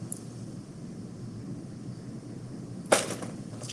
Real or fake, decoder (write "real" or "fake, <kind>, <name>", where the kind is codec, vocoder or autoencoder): real